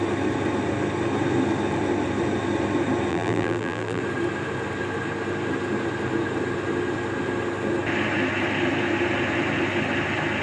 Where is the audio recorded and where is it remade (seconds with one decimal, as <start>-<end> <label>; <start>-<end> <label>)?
0.0-3.1 recorded; 3.1-4.0 remade; 4.0-10.4 recorded